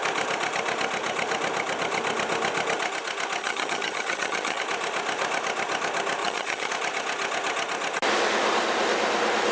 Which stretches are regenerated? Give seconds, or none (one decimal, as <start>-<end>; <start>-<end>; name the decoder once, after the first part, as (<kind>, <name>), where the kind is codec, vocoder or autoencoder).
3.4-4.6 (vocoder, HiFi-GAN); 6.2-6.7